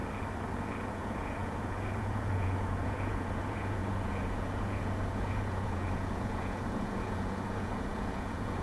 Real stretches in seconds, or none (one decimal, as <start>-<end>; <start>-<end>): 0.0-0.9